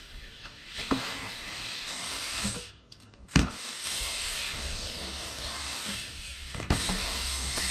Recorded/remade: remade